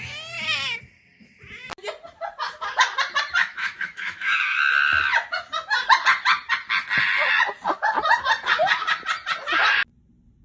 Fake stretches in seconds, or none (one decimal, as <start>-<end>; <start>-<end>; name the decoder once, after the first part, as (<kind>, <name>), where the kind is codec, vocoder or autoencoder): 3.4-4.7 (autoencoder, DAC-VAE)